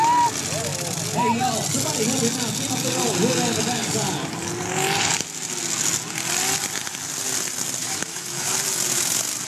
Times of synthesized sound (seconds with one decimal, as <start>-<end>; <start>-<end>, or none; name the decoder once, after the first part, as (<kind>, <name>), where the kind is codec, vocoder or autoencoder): 7.8-8.5 (autoencoder, DAC-VAE)